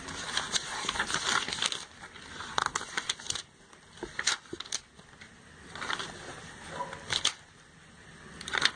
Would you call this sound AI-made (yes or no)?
no